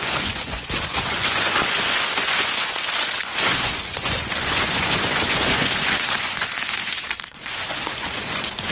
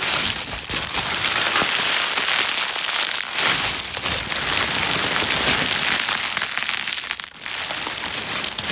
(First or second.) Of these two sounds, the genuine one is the second